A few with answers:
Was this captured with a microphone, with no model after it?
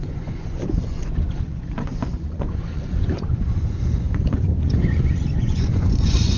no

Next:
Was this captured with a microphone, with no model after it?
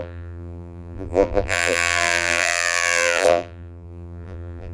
no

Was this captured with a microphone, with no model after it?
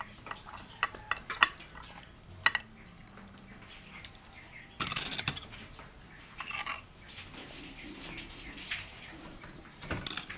yes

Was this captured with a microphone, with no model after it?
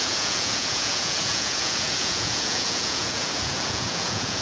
no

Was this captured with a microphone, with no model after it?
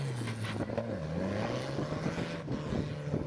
yes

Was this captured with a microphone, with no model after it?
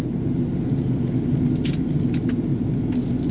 yes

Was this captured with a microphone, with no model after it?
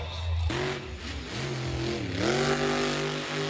yes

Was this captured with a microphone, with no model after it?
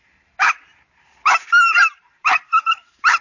no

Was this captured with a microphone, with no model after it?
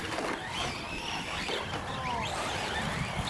yes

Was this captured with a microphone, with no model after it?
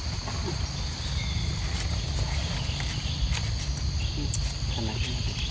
yes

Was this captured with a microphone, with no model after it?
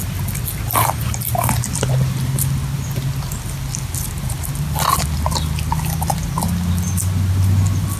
yes